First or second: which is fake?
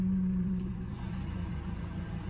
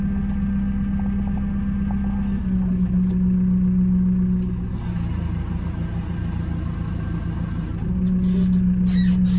first